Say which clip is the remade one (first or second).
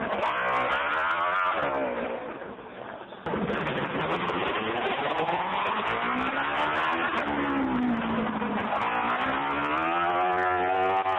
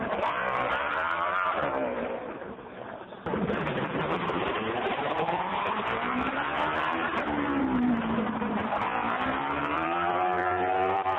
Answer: second